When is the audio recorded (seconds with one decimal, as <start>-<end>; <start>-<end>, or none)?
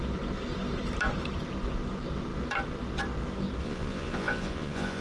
0.0-3.6